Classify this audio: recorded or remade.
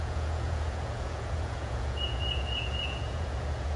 remade